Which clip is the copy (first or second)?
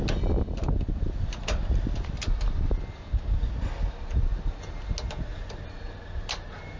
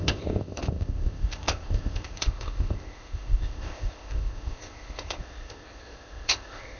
second